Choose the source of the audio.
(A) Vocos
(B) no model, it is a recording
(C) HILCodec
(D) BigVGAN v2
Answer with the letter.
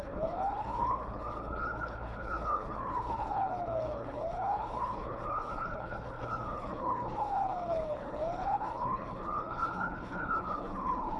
C